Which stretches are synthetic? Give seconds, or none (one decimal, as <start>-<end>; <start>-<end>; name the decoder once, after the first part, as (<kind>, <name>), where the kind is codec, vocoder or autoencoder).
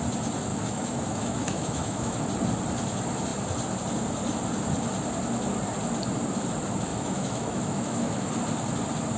0.5-2.2 (autoencoder, DAC-VAE); 6.9-8.4